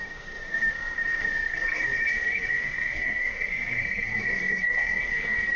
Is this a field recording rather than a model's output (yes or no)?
no